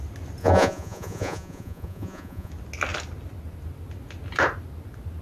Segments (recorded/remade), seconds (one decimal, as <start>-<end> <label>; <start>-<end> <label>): 0.0-0.4 recorded; 0.4-2.5 remade; 2.5-5.2 recorded